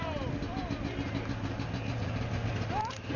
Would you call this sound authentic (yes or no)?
yes